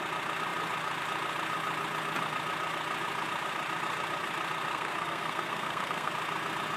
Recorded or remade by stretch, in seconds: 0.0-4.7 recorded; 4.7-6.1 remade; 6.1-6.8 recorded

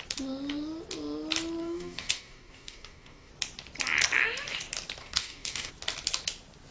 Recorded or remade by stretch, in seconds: 0.0-1.6 recorded; 1.6-3.3 remade; 3.3-5.0 recorded; 5.0-5.7 remade; 5.7-6.7 recorded

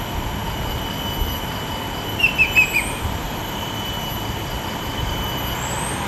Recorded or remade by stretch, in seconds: 0.0-6.1 recorded